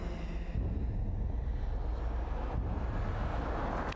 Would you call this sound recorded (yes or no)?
yes